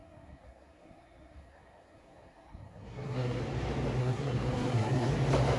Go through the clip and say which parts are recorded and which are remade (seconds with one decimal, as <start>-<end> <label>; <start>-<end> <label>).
0.0-3.4 remade; 3.4-4.0 recorded; 4.0-5.1 remade; 5.1-5.6 recorded